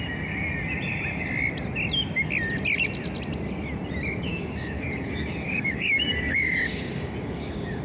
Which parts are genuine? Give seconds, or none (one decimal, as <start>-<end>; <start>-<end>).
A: 0.0-4.3